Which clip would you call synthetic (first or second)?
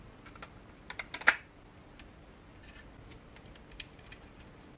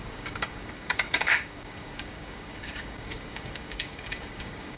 second